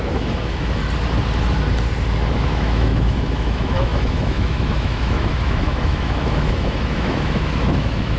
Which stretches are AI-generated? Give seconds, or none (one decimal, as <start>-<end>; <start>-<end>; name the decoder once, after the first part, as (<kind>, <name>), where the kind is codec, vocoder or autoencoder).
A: 0.0-0.8 (autoencoder, DAC-VAE); 2.3-8.2